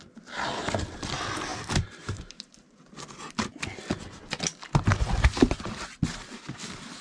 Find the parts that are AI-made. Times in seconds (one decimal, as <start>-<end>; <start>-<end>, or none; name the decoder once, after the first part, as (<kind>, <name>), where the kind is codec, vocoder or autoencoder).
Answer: 1.5-3.4 (vocoder, BigVGAN v2)